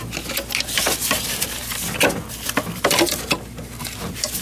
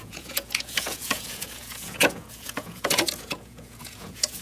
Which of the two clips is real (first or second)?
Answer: first